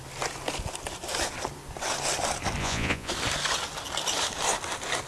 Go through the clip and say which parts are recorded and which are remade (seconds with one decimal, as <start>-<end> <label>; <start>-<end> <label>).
0.0-2.6 recorded; 2.6-3.1 remade; 3.1-5.1 recorded